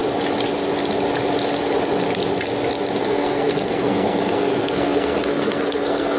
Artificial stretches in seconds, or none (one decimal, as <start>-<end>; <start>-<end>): 3.0-6.2